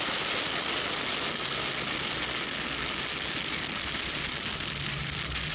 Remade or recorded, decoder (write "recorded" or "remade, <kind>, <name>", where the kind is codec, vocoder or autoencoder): recorded